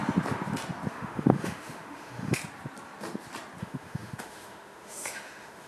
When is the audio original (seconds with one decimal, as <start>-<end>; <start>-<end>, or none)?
0.0-0.9; 2.4-3.6